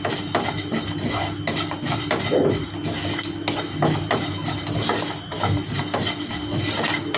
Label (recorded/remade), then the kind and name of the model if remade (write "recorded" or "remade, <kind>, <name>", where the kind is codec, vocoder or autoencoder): recorded